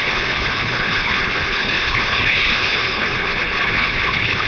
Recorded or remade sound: remade